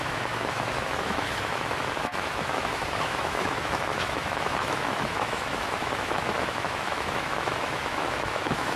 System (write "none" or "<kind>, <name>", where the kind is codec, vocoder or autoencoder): autoencoder, DAC-VAE